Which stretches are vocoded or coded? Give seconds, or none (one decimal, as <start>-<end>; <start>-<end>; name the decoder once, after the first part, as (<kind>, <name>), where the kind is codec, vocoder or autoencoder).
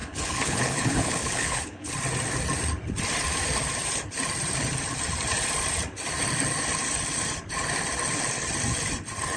0.0-1.9 (codec, HILCodec)